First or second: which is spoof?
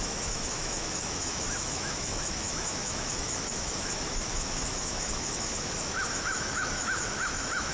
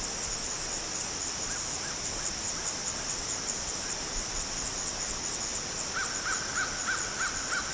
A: first